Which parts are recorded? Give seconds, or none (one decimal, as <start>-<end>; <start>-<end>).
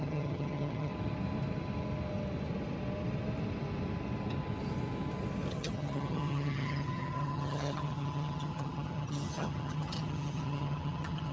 0.9-5.5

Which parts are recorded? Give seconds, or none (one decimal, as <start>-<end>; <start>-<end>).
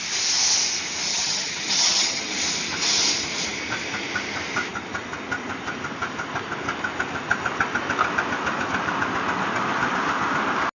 0.0-1.1; 2.4-10.8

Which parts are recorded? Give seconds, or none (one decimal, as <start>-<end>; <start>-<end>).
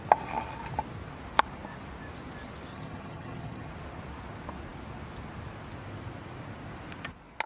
0.0-2.7; 3.7-7.5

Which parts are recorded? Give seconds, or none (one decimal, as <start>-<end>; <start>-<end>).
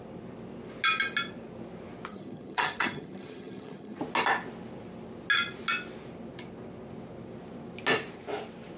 0.0-2.1; 4.0-8.8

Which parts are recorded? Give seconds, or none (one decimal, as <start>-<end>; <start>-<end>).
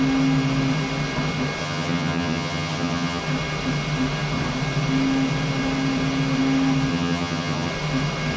0.0-1.6; 3.2-6.9; 7.7-8.4